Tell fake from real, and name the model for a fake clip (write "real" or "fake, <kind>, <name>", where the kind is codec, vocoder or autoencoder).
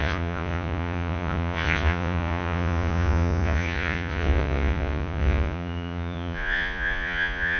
fake, vocoder, Vocos